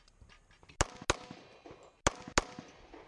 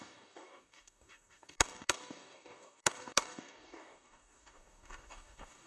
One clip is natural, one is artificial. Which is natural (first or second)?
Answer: first